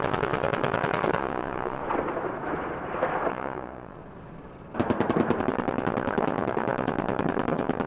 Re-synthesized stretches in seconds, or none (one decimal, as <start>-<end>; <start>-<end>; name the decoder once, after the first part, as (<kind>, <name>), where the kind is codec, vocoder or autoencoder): 0.0-1.8 (vocoder, Vocos); 3.3-4.0; 5.4-7.9